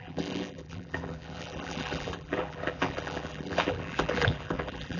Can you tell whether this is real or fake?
fake